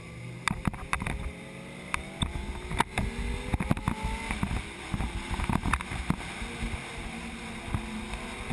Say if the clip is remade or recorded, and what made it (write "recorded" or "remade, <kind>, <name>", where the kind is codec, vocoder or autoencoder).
recorded